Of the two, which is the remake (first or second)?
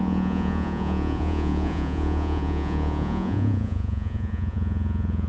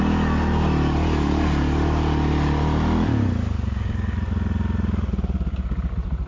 first